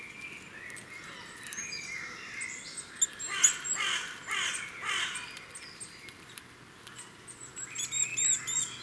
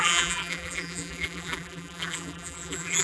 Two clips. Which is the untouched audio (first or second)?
first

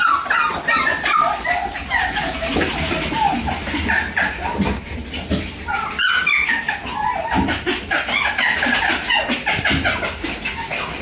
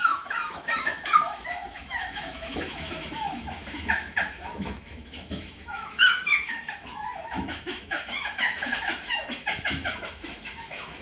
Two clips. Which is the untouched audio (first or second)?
first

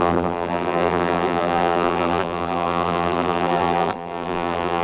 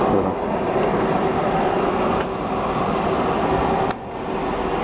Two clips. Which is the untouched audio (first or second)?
second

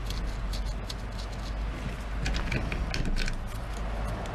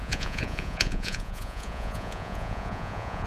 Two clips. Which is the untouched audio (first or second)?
first